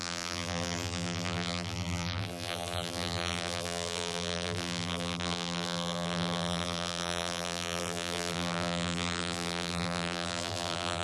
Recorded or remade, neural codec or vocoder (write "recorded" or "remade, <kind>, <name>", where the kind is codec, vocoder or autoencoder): remade, vocoder, BigVGAN v2